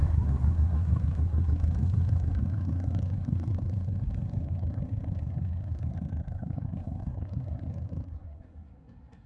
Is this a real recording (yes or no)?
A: no